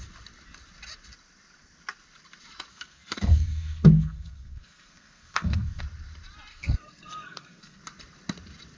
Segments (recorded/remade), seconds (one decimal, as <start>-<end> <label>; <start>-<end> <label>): 0.0-2.7 recorded; 2.7-5.8 remade; 5.8-6.5 recorded; 6.5-7.8 remade; 7.8-8.8 recorded